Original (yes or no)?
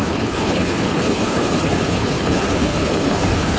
no